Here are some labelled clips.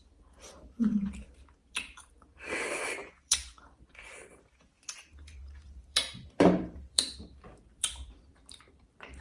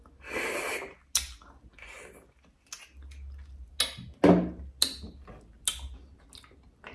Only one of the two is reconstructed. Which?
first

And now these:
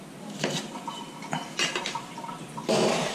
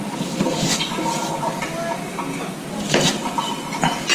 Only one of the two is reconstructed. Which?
first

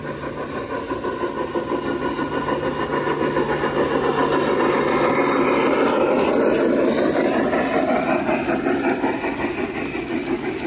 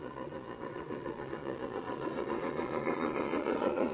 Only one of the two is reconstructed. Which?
second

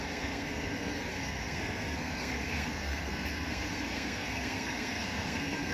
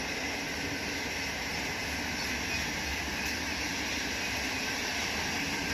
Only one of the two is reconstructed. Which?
first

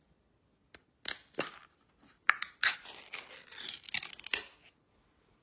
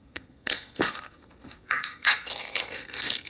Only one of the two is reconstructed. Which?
second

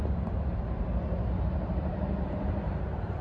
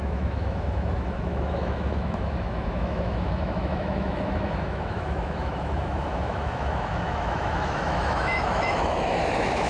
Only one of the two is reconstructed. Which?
second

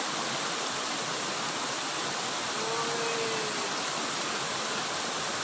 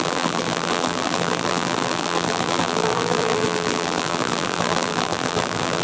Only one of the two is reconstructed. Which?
second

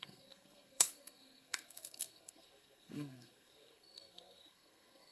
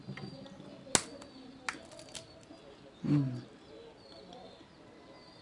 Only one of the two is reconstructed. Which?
first